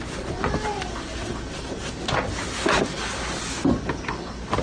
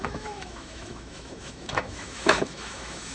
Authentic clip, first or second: first